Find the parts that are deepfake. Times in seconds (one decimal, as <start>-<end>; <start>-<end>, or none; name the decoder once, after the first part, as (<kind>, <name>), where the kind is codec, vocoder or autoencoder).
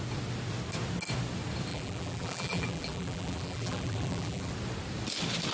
1.7-4.5 (vocoder, BigVGAN v2)